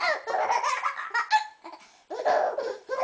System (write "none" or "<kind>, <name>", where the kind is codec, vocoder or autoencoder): none